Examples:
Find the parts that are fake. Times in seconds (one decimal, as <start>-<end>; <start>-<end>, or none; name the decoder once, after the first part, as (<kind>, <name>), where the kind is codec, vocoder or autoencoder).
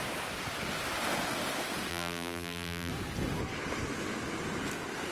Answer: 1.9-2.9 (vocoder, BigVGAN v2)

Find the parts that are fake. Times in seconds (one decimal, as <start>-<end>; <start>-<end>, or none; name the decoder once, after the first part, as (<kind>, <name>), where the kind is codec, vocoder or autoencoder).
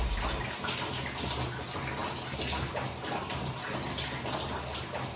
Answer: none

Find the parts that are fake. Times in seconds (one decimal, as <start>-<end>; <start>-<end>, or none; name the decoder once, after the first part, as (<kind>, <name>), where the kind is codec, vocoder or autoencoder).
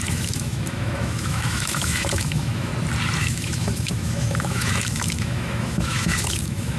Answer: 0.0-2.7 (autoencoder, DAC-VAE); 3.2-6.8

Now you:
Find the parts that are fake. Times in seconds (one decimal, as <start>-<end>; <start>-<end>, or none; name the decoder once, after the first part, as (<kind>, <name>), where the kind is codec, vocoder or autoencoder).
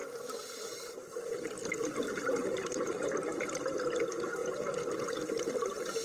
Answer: 0.6-4.4 (vocoder, BigVGAN v2); 5.3-6.0